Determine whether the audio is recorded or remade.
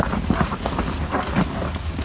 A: recorded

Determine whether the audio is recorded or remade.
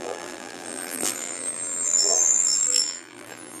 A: remade